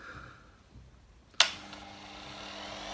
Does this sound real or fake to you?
real